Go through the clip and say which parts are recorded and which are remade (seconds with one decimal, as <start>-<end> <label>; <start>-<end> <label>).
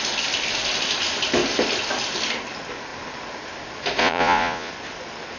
0.0-4.0 recorded; 4.0-4.7 remade; 4.7-5.4 recorded